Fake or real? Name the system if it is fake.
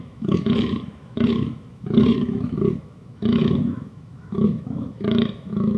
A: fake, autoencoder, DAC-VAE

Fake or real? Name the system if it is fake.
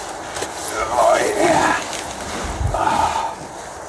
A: real